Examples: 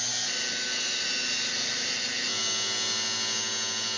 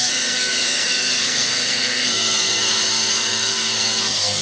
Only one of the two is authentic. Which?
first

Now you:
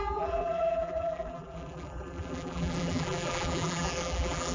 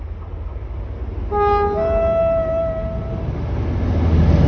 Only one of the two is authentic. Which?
second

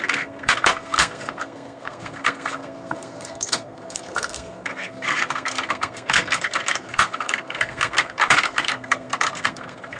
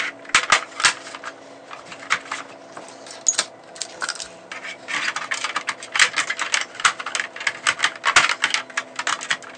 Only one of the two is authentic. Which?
second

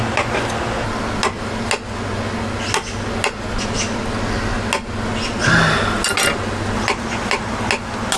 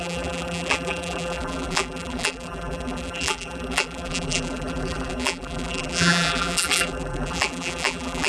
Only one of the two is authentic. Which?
first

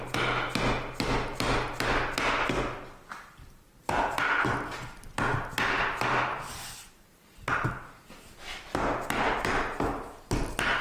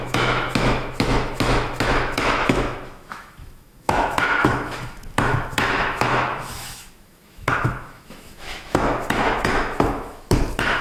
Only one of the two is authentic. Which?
first